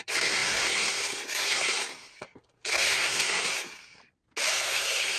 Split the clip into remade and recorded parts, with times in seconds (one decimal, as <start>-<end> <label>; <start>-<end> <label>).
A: 0.0-4.0 remade; 4.0-4.5 recorded; 4.5-5.2 remade